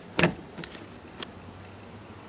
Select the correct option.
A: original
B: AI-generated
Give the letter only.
A